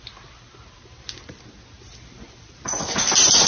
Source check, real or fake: real